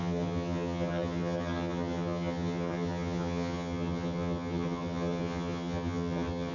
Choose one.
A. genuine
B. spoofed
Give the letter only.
B